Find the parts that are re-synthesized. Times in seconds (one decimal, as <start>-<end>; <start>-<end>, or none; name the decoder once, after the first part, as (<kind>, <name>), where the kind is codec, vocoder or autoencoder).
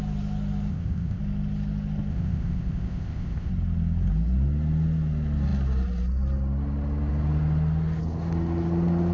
0.7-1.2 (codec, ZipCodec); 2.1-3.5